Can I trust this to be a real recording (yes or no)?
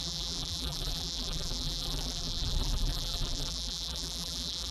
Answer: no